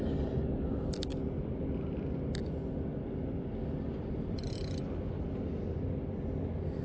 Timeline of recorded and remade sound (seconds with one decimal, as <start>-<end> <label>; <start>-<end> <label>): 0.0-6.8 recorded